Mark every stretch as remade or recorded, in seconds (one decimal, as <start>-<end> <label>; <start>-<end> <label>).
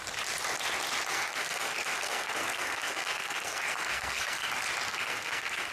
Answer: 0.0-1.1 recorded; 1.1-4.5 remade; 4.5-4.9 recorded; 4.9-5.7 remade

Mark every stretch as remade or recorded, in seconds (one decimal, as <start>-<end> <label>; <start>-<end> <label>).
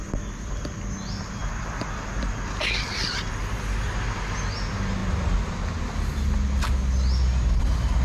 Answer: 0.0-8.0 recorded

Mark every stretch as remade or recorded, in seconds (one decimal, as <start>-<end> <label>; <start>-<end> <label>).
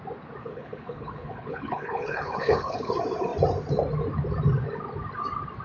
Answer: 0.0-0.4 recorded; 0.4-2.9 remade; 2.9-5.6 recorded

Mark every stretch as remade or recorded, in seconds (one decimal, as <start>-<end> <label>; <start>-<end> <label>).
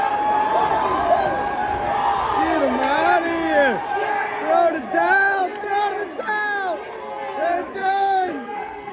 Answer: 0.0-7.8 recorded; 7.8-8.9 remade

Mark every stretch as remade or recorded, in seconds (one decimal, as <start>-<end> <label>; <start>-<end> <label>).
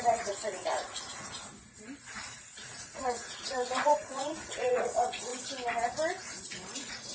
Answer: 0.0-1.5 remade; 1.5-2.4 recorded; 2.4-5.3 remade; 5.3-6.4 recorded; 6.4-7.1 remade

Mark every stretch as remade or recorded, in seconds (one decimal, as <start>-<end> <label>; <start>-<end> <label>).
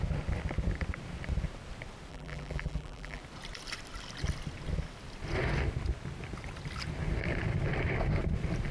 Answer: 0.0-2.1 recorded; 2.1-3.2 remade; 3.2-8.7 recorded